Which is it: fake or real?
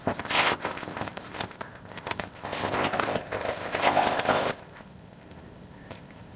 fake